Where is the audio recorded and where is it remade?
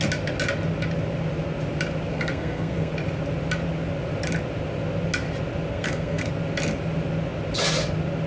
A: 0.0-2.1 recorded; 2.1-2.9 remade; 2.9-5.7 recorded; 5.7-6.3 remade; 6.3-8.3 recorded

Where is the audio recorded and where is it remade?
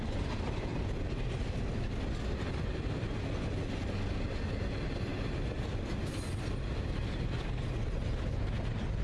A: 0.0-9.0 recorded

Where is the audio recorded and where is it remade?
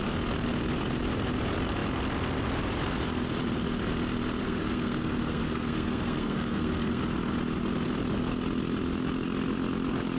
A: 0.0-4.4 recorded; 4.4-7.0 remade; 7.0-10.2 recorded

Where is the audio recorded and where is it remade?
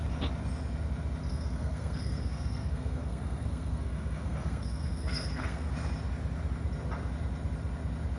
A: 0.0-1.3 recorded; 1.3-5.7 remade; 5.7-8.2 recorded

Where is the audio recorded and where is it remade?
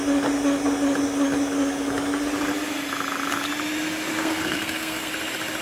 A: 0.0-4.1 recorded; 4.1-5.1 remade; 5.1-5.6 recorded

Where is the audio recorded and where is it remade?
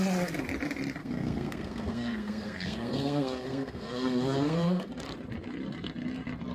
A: 0.0-1.0 recorded; 1.0-4.9 remade; 4.9-6.5 recorded